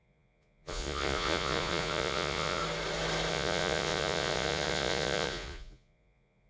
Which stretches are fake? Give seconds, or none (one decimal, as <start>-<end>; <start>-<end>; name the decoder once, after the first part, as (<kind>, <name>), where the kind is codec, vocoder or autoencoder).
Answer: 0.0-2.6 (vocoder, Vocos); 3.3-6.5

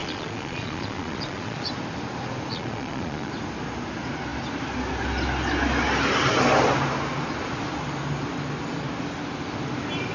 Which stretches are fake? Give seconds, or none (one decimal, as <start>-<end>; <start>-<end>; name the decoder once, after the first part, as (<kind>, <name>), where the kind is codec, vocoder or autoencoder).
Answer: 0.0-1.6 (vocoder, Vocos); 2.5-3.3